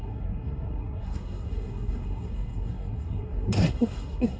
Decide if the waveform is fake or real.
fake